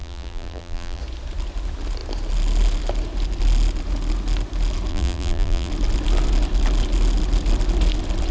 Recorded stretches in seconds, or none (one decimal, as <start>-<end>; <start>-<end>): 1.0-4.9; 5.7-8.3